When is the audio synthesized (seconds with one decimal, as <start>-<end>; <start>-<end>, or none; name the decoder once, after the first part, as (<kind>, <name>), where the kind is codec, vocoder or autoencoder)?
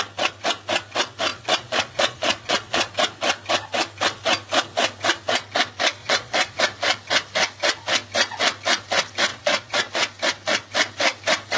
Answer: 1.3-2.9 (vocoder, Vocos); 6.0-6.6; 9.3-9.9